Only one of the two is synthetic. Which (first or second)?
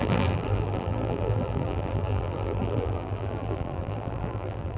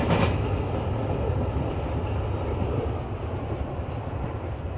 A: first